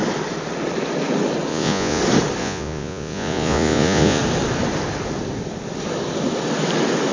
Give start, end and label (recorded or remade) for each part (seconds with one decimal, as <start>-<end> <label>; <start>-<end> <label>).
0.0-1.5 recorded; 1.5-2.0 remade; 2.0-2.4 recorded; 2.4-4.2 remade; 4.2-7.1 recorded